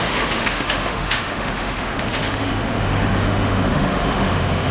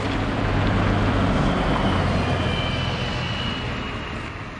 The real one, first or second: second